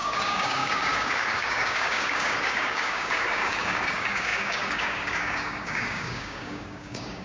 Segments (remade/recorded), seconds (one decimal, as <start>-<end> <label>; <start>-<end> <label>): 0.0-7.2 remade